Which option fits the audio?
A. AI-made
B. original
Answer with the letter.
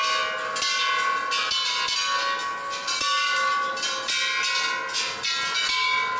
B